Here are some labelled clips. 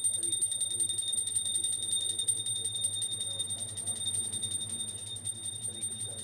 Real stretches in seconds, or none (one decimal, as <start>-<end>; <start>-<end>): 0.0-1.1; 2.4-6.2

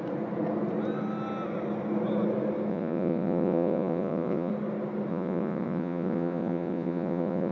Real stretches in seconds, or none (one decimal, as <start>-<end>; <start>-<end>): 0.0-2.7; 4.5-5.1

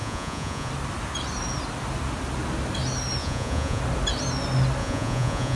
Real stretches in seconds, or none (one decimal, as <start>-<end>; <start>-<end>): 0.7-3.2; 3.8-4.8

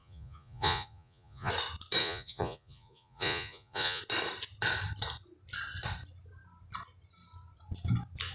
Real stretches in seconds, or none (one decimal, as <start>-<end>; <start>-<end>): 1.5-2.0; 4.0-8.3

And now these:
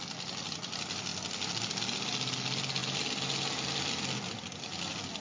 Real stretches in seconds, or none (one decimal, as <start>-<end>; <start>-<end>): 0.0-5.2

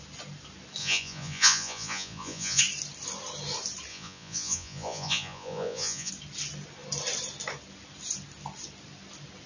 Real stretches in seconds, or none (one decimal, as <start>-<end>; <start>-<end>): 0.0-0.8; 2.6-3.9; 6.1-9.5

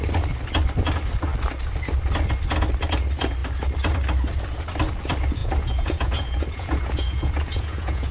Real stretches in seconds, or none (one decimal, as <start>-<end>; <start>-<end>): 0.0-5.4